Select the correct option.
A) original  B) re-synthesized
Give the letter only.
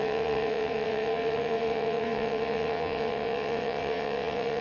B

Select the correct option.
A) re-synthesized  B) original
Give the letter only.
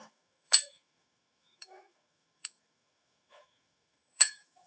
A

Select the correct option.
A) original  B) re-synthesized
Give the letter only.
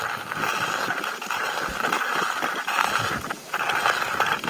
A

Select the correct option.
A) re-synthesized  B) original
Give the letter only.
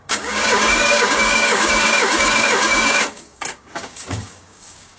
A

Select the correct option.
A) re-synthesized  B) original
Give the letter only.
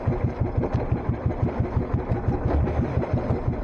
B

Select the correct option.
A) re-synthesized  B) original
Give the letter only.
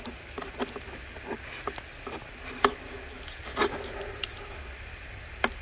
B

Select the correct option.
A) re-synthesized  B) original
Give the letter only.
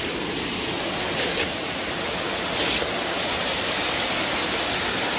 B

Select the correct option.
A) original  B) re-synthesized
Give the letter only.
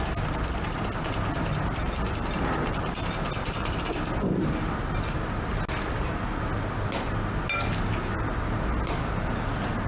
A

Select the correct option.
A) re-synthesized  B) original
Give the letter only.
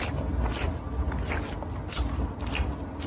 B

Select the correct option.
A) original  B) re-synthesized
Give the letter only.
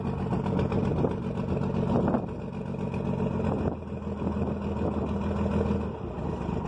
A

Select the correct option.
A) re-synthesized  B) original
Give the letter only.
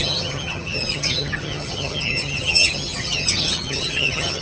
A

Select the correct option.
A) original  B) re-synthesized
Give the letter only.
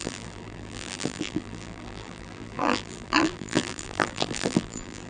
B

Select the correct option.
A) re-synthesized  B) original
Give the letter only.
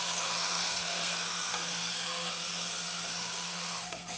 A